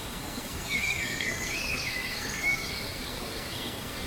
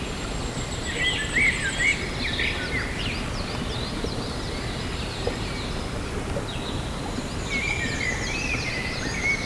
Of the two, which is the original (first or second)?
second